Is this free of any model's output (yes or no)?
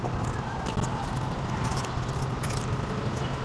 yes